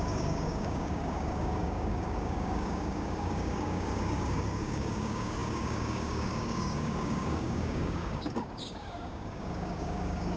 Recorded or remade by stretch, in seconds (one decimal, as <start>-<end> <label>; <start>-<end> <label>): 0.0-10.4 remade